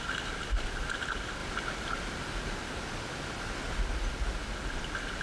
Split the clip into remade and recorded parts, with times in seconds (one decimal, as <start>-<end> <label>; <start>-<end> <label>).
0.0-5.2 recorded